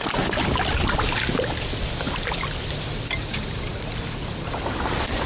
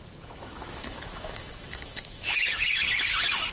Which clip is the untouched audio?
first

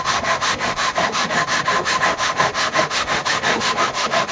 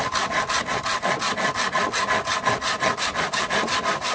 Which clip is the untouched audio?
second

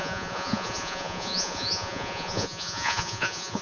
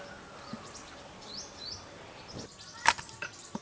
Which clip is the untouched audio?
second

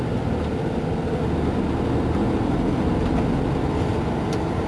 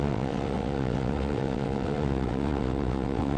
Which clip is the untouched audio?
first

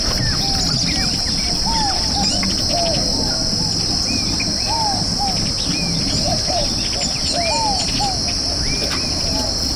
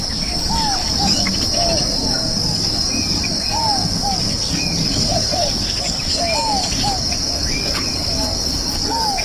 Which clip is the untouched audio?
first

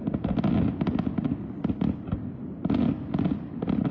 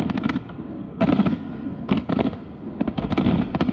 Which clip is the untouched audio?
first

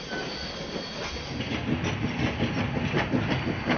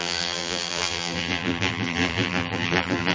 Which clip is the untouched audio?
first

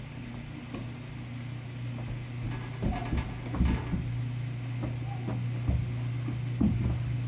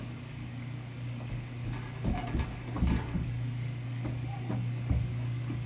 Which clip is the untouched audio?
first